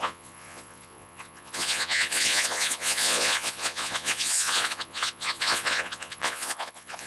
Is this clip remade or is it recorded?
remade